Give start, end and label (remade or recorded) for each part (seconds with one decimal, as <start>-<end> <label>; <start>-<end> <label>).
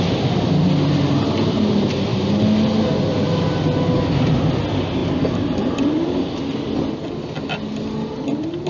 0.0-8.7 recorded